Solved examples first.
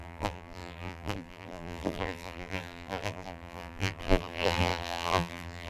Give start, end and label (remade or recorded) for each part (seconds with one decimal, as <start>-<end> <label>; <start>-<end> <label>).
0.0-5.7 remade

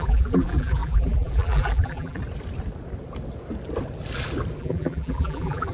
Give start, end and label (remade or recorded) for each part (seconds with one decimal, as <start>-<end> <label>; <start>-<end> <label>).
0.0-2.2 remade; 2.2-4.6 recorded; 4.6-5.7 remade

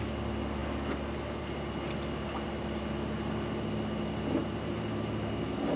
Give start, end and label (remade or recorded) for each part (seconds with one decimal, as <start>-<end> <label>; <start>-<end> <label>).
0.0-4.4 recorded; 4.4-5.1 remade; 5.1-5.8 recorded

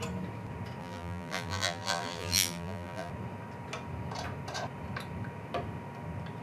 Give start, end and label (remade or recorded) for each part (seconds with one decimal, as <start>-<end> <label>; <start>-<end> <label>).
0.0-0.8 recorded; 0.8-3.1 remade; 3.1-6.4 recorded